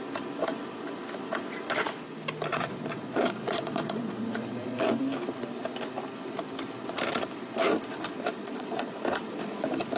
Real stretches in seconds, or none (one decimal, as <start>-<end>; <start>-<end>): 0.0-2.5; 5.0-8.4; 8.9-10.0

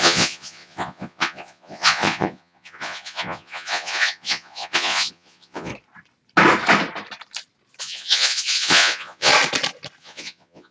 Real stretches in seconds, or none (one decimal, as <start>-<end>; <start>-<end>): 5.7-7.8; 9.3-10.0

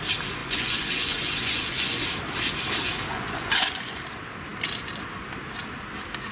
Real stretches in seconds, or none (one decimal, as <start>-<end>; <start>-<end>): 0.0-0.4; 2.1-3.1; 4.0-6.3

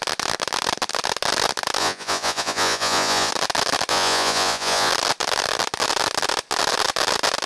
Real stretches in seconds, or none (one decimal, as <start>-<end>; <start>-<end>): 0.0-1.8; 3.3-3.9; 4.9-7.5

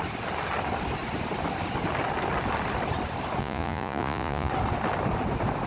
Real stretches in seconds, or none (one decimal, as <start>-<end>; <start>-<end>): 0.0-3.4; 4.5-5.7

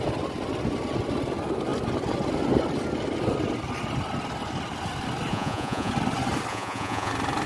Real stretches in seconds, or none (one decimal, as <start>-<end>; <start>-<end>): 0.0-5.3; 5.9-6.5; 7.1-7.5